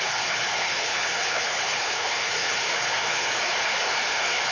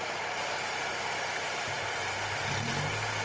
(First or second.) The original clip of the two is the second